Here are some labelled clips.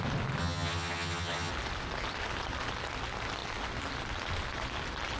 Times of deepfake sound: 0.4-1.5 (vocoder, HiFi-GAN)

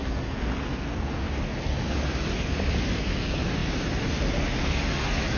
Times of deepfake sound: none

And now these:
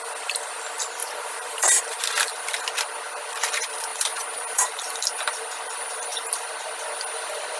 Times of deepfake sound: 1.0-1.8 (vocoder, BigVGAN v2); 3.9-5.2